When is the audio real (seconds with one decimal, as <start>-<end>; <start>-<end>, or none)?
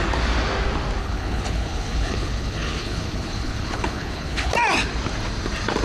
0.0-1.0; 4.5-5.8